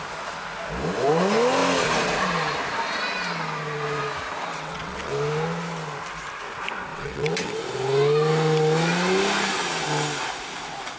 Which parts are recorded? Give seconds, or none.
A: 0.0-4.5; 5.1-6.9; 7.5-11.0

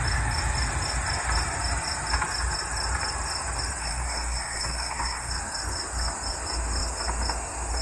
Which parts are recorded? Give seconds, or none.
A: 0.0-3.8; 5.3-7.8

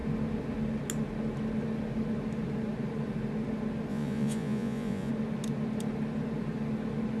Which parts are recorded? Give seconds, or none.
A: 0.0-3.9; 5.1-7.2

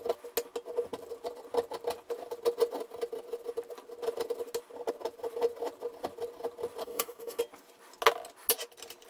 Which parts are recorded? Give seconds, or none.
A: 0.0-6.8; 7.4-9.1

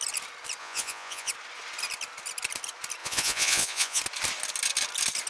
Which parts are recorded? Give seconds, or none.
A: 0.0-0.6; 1.3-3.0; 4.0-5.3

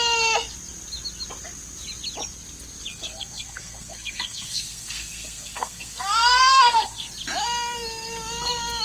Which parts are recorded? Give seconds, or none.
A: 0.0-2.9; 7.1-8.8